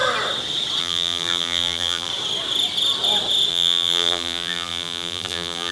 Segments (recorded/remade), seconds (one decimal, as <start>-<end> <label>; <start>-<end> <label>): 0.0-0.8 recorded; 0.8-2.1 remade; 2.1-3.5 recorded; 3.5-5.7 remade